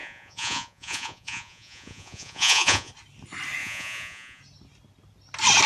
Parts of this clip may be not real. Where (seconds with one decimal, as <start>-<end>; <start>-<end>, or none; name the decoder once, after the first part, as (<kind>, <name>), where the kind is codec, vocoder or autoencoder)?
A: 0.0-2.9 (vocoder, Vocos); 3.6-4.4